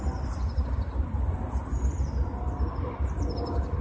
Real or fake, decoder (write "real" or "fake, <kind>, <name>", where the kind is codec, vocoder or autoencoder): real